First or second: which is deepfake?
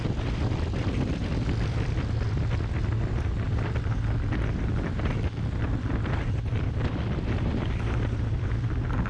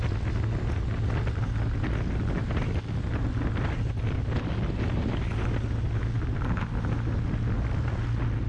first